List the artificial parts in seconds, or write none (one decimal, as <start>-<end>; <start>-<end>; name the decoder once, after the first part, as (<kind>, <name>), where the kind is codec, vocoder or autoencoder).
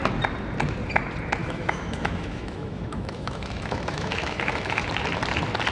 1.4-4.8 (autoencoder, DAC-VAE)